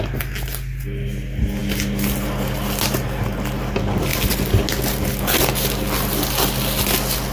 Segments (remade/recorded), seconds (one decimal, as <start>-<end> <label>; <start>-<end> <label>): 0.0-7.3 recorded